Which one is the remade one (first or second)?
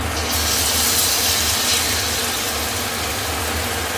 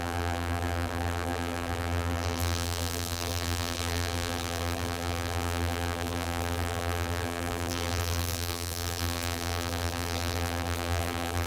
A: second